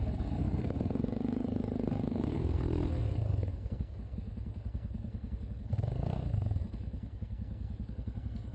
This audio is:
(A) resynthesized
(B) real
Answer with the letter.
A